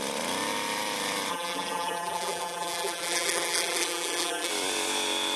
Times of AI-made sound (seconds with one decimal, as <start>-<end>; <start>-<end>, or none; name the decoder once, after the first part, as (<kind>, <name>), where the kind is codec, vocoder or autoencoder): 1.3-4.5 (vocoder, BigVGAN v2)